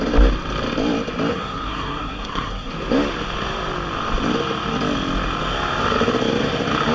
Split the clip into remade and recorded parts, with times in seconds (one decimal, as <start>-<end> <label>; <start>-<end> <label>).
0.0-1.3 recorded; 1.3-2.7 remade; 2.7-6.9 recorded